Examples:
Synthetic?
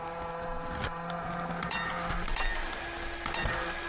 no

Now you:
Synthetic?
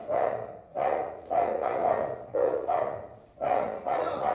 yes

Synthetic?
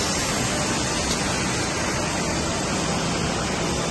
no